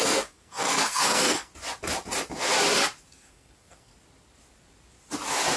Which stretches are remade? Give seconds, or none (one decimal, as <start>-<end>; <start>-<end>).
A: 0.0-1.5; 3.1-3.9